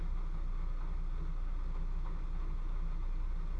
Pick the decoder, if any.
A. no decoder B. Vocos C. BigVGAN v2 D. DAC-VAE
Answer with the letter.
A